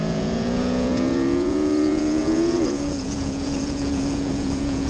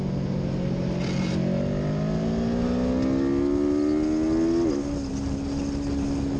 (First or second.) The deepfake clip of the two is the first